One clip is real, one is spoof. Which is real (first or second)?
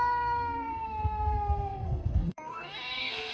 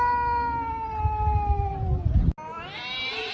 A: second